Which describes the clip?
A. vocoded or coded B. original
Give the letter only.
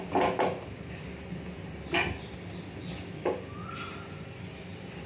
B